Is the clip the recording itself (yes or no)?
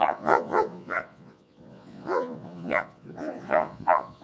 no